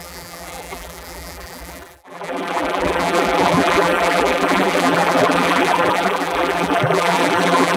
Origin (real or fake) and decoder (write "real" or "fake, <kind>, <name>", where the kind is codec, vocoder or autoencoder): fake, vocoder, BigVGAN v2